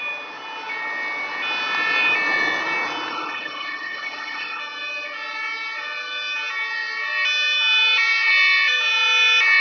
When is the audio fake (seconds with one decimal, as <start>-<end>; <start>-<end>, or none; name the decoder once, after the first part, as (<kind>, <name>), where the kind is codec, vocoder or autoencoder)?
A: 3.1-4.6 (codec, HILCodec)